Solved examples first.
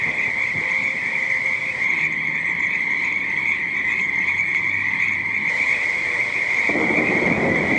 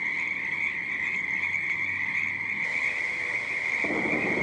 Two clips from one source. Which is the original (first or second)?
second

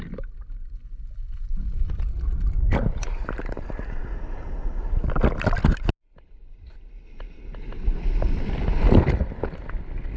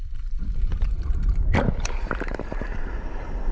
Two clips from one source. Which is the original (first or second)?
first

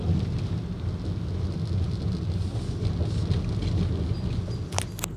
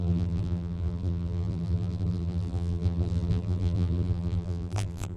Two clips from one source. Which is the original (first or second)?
first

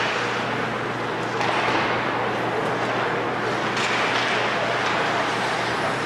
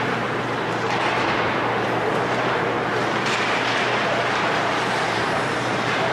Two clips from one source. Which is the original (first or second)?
first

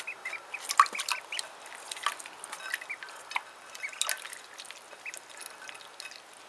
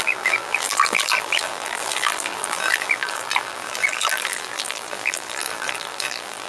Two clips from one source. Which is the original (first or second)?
first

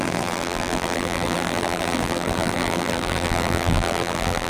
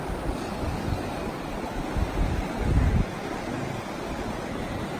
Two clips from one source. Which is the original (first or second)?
second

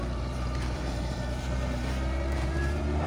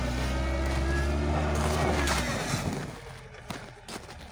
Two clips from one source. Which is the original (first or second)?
second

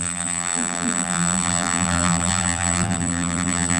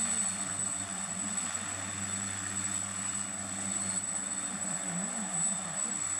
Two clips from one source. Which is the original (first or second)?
second